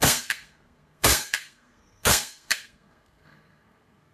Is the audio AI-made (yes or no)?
yes